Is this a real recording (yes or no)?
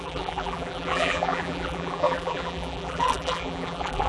no